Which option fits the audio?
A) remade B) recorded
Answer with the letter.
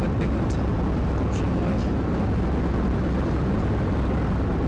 B